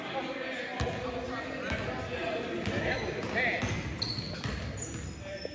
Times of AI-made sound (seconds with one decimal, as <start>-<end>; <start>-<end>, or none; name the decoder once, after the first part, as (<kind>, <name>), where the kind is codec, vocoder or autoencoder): none